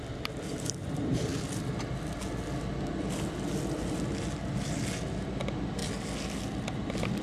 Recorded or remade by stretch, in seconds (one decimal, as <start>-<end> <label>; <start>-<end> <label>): 0.0-0.8 recorded; 0.8-1.3 remade; 1.3-7.2 recorded